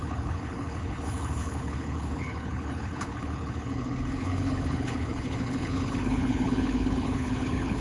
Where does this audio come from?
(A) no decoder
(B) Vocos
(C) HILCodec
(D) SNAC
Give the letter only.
C